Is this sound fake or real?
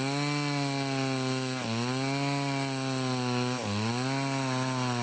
real